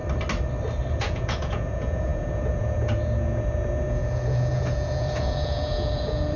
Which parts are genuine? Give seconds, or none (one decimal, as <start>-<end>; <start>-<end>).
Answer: 0.0-0.9